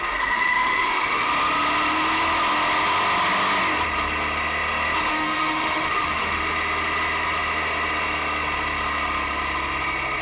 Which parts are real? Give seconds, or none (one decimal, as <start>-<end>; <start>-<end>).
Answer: 1.3-5.1; 6.4-10.2